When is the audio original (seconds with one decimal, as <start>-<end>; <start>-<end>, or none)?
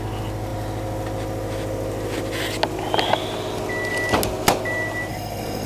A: 0.0-5.1